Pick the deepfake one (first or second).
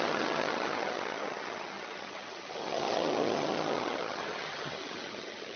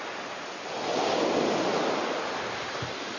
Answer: first